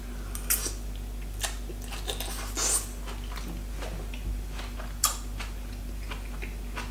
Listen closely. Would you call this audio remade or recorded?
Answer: recorded